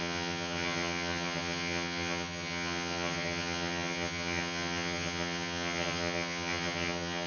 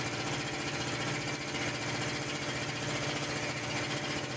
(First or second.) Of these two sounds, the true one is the second